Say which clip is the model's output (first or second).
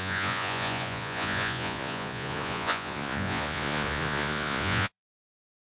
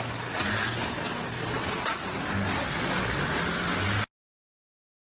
first